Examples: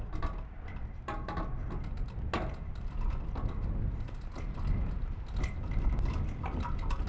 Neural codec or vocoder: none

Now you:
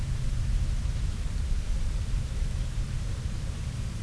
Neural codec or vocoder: vocoder, BigVGAN v2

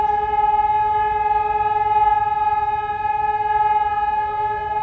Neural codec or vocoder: none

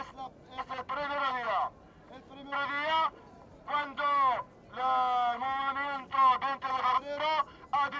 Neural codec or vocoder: none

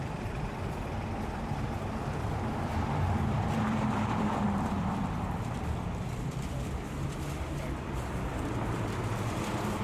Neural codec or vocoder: vocoder, BigVGAN v2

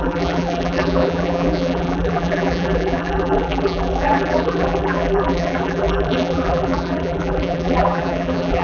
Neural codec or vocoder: vocoder, BigVGAN v2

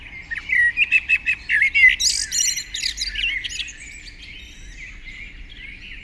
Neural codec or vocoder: none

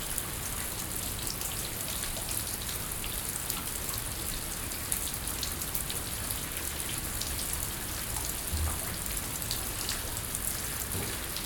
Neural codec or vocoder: none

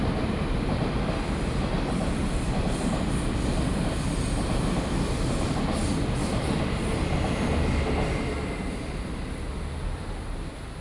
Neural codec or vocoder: none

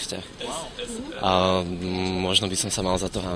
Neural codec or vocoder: vocoder, BigVGAN v2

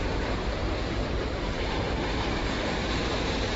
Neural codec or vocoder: vocoder, BigVGAN v2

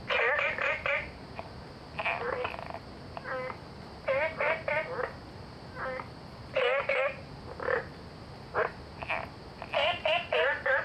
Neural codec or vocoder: none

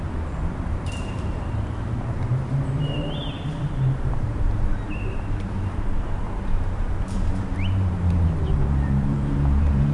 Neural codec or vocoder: vocoder, BigVGAN v2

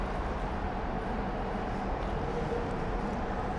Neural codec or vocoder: none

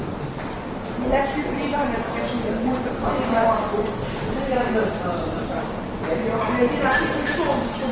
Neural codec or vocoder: none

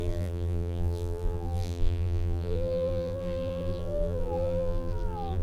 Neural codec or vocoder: vocoder, BigVGAN v2